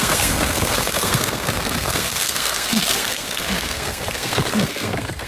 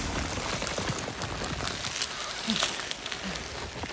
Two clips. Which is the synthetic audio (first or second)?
first